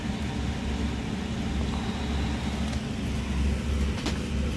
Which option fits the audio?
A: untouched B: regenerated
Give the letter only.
A